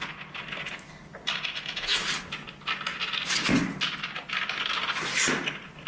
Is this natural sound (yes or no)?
yes